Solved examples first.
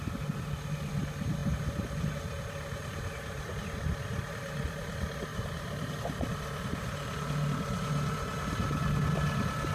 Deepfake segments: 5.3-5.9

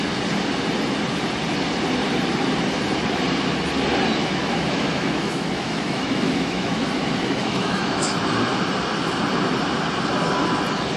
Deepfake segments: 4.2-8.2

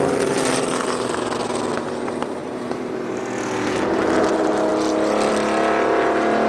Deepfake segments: 2.4-3.2

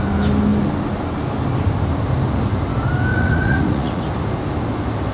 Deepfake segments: 3.1-4.0

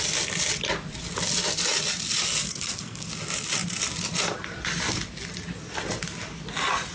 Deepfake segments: 2.4-3.1